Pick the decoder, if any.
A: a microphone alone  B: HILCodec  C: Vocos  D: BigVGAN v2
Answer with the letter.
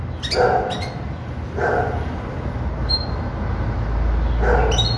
A